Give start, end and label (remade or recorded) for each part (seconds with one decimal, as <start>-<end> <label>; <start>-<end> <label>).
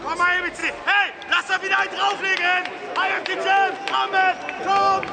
0.0-5.1 recorded